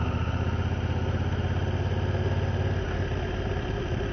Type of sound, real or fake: real